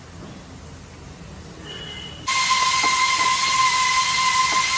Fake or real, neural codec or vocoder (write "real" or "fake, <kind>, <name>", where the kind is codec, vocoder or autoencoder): real